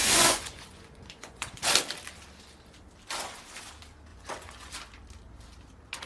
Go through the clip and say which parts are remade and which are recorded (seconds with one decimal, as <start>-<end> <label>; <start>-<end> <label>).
0.0-1.7 remade; 1.7-4.1 recorded; 4.1-4.7 remade; 4.7-6.1 recorded